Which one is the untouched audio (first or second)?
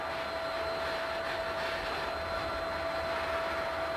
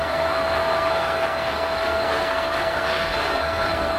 first